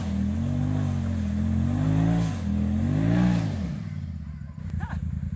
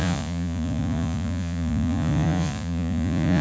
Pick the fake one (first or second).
second